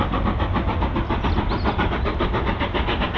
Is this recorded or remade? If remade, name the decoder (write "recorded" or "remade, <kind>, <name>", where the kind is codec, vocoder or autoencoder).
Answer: recorded